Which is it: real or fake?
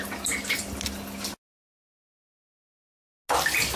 real